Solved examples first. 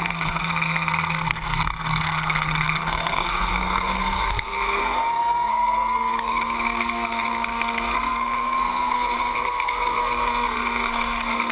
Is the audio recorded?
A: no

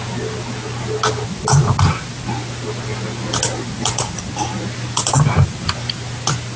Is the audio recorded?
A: yes